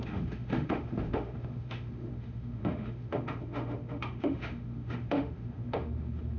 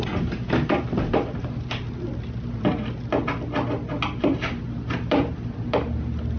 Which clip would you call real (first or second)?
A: second